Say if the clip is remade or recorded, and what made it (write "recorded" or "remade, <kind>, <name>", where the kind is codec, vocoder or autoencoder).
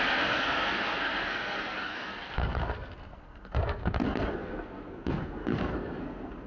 remade, codec, SNAC